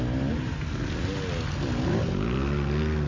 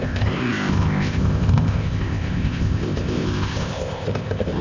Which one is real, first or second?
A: first